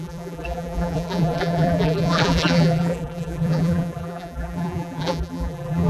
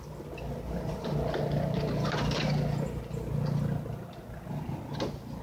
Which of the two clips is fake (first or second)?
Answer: first